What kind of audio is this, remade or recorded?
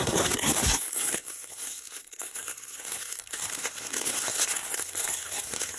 remade